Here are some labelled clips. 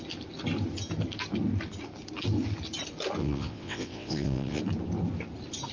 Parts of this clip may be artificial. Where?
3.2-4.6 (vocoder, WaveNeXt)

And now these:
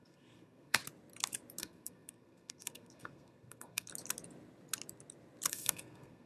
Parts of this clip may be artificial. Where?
0.0-0.8 (codec, SNAC); 1.6-3.9; 5.5-6.3

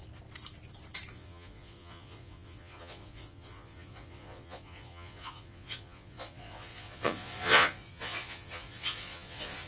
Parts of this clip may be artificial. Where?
1.1-9.7 (vocoder, Vocos)

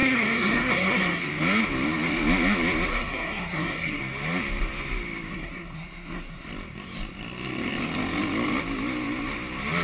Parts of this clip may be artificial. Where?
0.0-1.2 (codec, SNAC); 2.9-4.0; 5.3-6.5

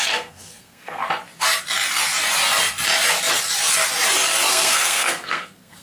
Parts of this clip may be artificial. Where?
0.0-1.0 (codec, SNAC); 4.5-5.8